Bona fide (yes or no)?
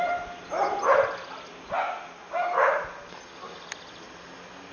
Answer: yes